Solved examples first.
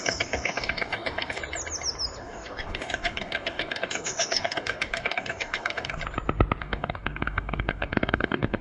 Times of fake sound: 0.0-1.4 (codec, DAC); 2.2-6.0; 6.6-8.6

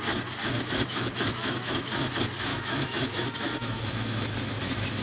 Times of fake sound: 0.4-2.1 (autoencoder, DAC-VAE); 2.5-5.0

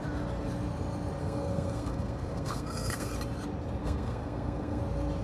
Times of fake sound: 1.2-3.1 (codec, SNAC); 3.8-4.8

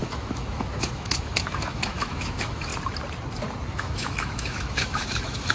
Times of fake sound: 0.0-2.7 (autoencoder, DAC-VAE); 3.7-5.5

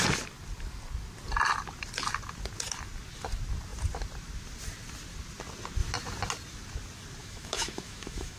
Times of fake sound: 7.2-8.4 (autoencoder, DAC-VAE)

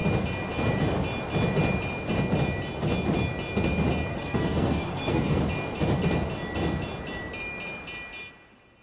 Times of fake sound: 4.1-5.4 (codec, SNAC)

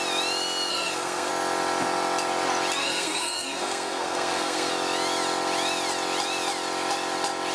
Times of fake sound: 0.7-1.3 (codec, SNAC); 2.8-4.7

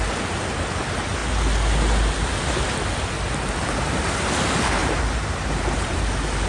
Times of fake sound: 4.8-6.0 (vocoder, BigVGAN v2)